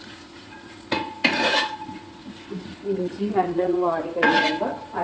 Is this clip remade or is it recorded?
remade